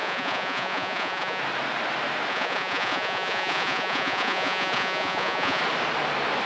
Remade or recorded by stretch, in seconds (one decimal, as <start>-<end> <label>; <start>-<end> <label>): 0.0-1.4 remade; 1.4-2.3 recorded; 2.3-5.6 remade; 5.6-6.5 recorded